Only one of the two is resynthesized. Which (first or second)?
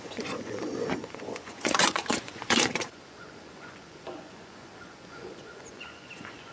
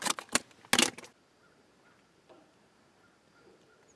first